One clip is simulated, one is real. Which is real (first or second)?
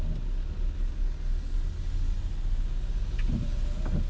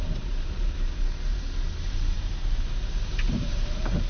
first